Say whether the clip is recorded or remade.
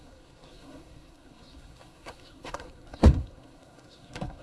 remade